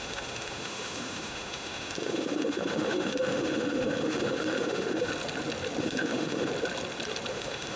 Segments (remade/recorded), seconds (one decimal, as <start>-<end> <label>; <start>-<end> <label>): 0.0-5.1 remade; 5.1-5.8 recorded; 5.8-6.5 remade; 6.5-7.3 recorded; 7.3-7.8 remade